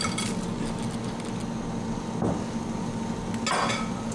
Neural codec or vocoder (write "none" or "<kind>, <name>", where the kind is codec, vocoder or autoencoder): none